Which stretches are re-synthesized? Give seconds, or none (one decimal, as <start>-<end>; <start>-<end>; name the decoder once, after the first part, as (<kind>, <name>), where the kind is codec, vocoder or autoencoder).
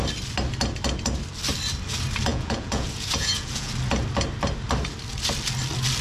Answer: 2.3-3.7 (vocoder, Vocos)